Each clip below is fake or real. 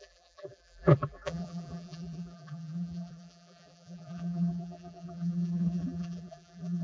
fake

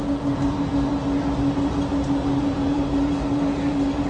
real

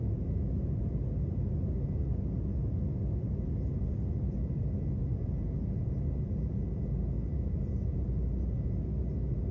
real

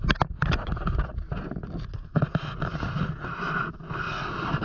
real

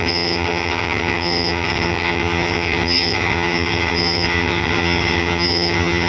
fake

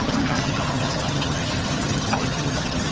fake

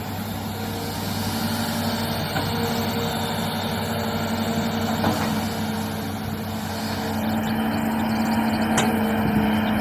real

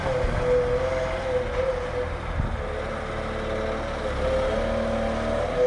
real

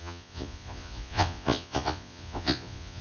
fake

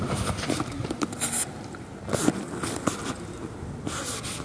real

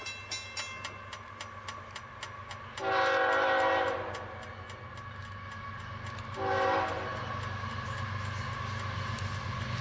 real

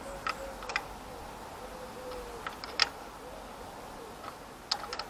real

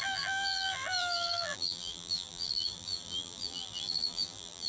fake